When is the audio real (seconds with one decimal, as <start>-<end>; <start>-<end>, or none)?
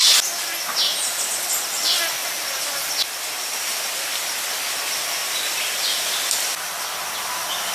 0.0-7.7